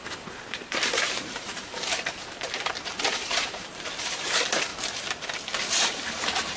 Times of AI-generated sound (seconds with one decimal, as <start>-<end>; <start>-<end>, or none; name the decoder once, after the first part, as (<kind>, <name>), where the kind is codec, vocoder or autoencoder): 0.0-4.7 (vocoder, BigVGAN v2); 5.7-6.6

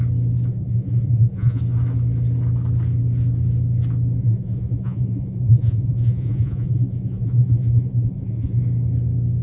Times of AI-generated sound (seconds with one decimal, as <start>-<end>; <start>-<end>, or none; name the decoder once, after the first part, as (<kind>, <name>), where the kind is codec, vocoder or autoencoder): 0.5-1.6 (vocoder, Vocos); 4.2-8.6

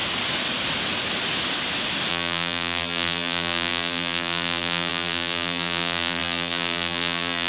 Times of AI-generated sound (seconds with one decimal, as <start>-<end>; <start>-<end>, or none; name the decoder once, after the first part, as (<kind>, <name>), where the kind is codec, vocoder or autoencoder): 2.1-7.5 (vocoder, BigVGAN v2)

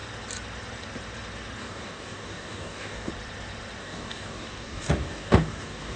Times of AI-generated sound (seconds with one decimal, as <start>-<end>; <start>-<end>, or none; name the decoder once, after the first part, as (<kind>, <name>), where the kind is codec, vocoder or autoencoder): 1.6-3.1 (codec, DAC); 3.8-6.0

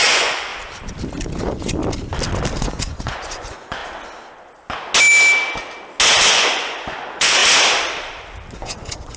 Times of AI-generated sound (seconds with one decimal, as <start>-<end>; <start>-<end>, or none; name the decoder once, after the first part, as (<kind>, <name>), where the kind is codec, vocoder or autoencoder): 0.0-0.5 (vocoder, Vocos); 1.4-1.8; 2.6-3.8; 6.3-7.4; 8.6-9.2

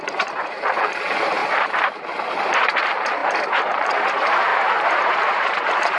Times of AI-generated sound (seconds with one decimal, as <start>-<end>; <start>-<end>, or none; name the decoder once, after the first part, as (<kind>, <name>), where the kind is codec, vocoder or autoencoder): 0.0-6.0 (vocoder, BigVGAN v2)